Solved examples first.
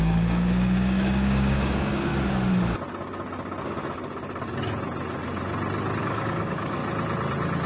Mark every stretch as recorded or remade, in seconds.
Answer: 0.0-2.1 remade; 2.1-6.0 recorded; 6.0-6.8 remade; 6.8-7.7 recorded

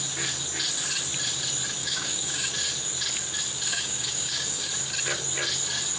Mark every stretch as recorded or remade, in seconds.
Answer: 0.0-1.8 recorded; 1.8-2.5 remade; 2.5-3.7 recorded; 3.7-4.7 remade; 4.7-6.0 recorded

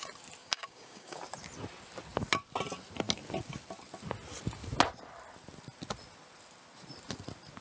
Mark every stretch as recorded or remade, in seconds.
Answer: 0.0-0.4 recorded; 0.4-1.2 remade; 1.2-7.6 recorded

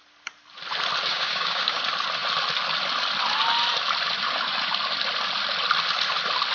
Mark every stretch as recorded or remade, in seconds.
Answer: 0.0-1.1 recorded; 1.1-1.8 remade; 1.8-6.5 recorded

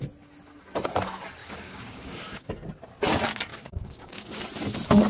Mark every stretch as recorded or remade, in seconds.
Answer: 0.0-1.4 recorded; 1.4-2.5 remade; 2.5-3.5 recorded; 3.5-4.4 remade; 4.4-5.1 recorded

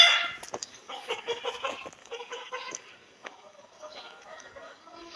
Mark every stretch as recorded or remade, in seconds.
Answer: 0.0-0.6 recorded; 0.6-1.4 remade; 1.4-2.0 recorded; 2.0-5.2 remade